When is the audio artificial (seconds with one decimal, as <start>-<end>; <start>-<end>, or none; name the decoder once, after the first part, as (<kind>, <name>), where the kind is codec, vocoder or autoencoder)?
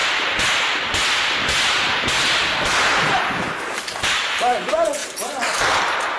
3.6-6.2 (vocoder, BigVGAN v2)